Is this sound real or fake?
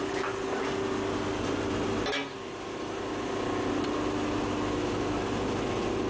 real